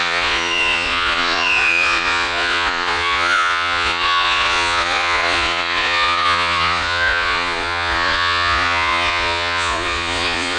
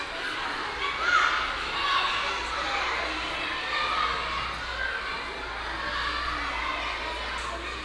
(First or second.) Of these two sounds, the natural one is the second